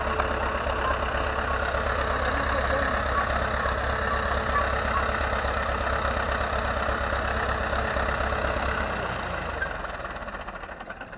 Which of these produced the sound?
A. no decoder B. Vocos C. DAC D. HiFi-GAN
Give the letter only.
A